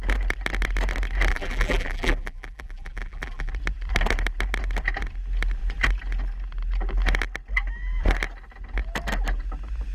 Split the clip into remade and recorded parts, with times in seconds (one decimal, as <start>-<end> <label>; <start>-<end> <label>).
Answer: 0.0-1.3 recorded; 1.3-3.5 remade; 3.5-9.9 recorded